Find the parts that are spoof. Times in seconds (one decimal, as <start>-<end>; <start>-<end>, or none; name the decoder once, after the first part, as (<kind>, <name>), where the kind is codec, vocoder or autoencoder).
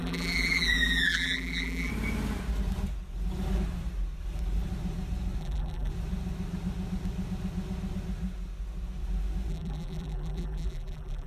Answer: 0.0-1.9 (vocoder, BigVGAN v2); 5.4-5.9; 9.5-11.3